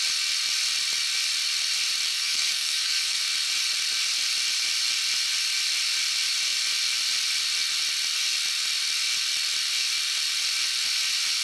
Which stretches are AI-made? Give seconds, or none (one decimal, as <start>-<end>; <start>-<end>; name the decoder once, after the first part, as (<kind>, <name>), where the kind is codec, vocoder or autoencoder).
2.1-3.2 (codec, SNAC)